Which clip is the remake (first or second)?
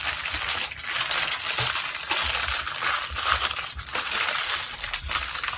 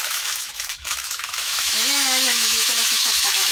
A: second